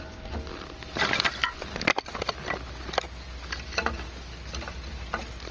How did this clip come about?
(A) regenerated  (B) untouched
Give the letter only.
B